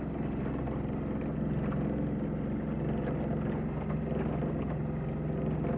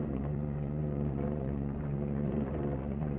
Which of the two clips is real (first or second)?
first